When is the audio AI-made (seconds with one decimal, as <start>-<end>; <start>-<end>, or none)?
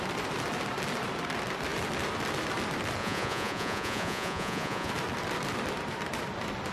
3.0-4.9